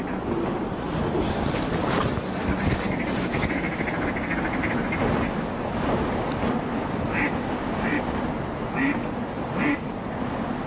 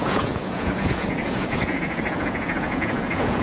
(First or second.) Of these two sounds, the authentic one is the first